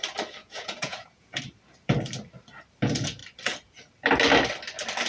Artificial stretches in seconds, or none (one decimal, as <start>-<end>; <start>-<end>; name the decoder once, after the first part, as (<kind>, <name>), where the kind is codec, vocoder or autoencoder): 0.4-1.4 (vocoder, Vocos)